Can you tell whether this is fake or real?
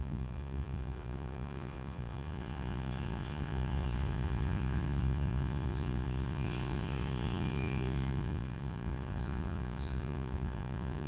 fake